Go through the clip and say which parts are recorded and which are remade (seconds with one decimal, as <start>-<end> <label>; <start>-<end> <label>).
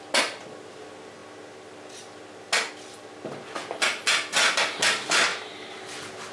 0.0-5.3 recorded; 5.3-5.8 remade; 5.8-6.3 recorded